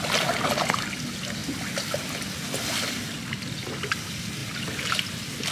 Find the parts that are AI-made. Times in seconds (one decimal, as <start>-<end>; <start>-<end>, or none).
4.4-5.0